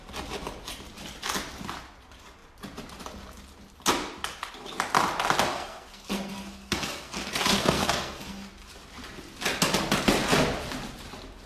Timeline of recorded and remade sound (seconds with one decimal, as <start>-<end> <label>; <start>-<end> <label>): 0.0-5.5 recorded; 5.5-8.5 remade; 8.5-11.5 recorded